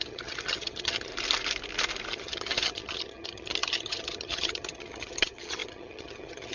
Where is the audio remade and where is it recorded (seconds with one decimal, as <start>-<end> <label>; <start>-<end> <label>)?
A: 0.0-1.1 remade; 1.1-2.1 recorded; 2.1-6.5 remade